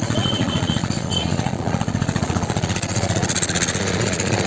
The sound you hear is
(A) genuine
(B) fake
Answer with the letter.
B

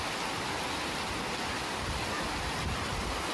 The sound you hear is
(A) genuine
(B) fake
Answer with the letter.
A